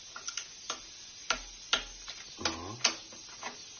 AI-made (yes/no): no